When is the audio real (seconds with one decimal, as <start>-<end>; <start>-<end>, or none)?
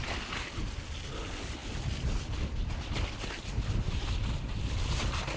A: 0.0-1.6; 4.8-5.4